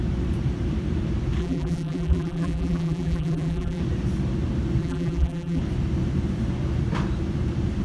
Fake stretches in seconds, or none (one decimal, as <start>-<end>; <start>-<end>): 1.4-3.8; 4.8-5.6